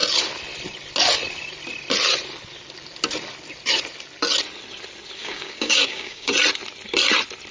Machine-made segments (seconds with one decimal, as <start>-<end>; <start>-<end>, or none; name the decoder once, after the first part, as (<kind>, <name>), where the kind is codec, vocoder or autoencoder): 5.2-6.3 (codec, DAC)